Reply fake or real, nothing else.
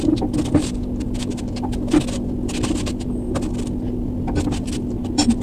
real